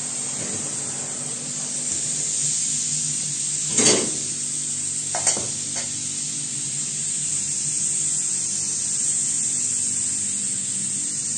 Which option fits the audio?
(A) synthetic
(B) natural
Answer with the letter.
B